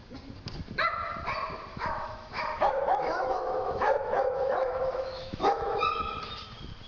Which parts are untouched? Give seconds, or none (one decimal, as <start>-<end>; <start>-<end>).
0.0-1.7; 5.8-6.9